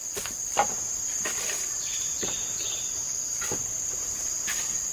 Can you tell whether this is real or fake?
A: fake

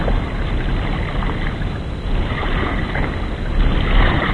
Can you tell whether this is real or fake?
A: real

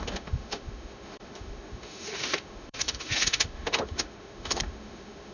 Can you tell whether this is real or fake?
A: fake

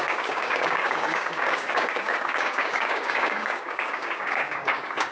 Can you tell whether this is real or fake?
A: fake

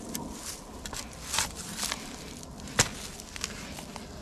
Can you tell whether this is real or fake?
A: real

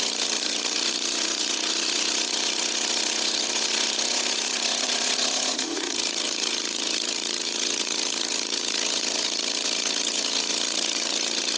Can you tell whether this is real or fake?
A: fake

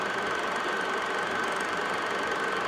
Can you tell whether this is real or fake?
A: real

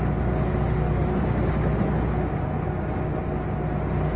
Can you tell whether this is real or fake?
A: real